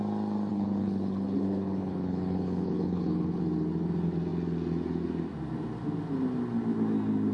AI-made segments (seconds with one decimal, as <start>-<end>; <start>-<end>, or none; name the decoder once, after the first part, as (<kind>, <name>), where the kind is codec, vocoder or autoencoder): 0.5-3.4 (codec, HILCodec)

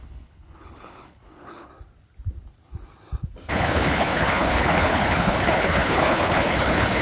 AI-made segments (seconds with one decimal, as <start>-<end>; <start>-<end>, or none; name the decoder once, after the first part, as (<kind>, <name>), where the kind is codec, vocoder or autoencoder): 0.0-1.7 (codec, HILCodec); 3.5-7.0

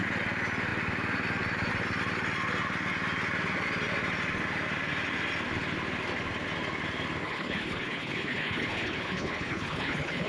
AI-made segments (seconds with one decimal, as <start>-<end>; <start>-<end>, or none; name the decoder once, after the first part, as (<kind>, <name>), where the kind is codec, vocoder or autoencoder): 7.2-10.3 (codec, HILCodec)

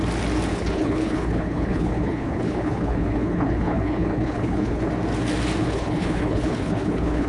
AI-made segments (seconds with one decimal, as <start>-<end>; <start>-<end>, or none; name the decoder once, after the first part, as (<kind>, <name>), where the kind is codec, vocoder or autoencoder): 0.5-4.9 (codec, HILCodec); 5.6-7.3

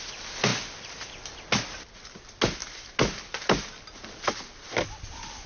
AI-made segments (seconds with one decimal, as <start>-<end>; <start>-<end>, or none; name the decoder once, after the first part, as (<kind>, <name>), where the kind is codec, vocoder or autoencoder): none

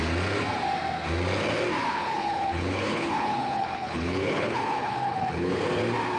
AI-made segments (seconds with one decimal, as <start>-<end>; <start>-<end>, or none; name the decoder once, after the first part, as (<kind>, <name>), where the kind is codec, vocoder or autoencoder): 1.9-5.6 (codec, HILCodec)

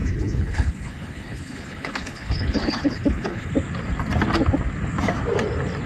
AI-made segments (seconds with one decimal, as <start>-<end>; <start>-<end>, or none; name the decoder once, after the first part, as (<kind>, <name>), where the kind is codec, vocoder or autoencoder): 0.0-3.5 (codec, HILCodec)

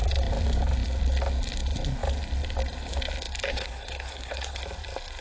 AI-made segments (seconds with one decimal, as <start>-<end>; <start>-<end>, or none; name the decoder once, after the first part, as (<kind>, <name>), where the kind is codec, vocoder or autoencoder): 3.5-4.6 (codec, HILCodec)